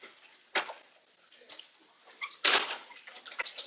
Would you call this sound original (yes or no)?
yes